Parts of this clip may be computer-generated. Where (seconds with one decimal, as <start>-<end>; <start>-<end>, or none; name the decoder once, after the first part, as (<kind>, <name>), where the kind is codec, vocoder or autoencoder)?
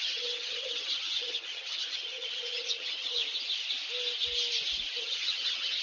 0.0-3.2 (vocoder, HiFi-GAN); 5.0-5.8